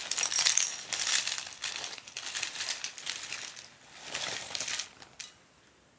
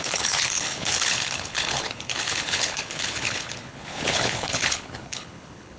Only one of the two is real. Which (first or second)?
first